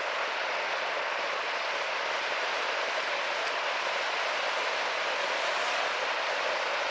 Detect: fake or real real